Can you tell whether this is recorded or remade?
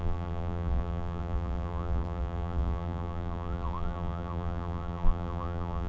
remade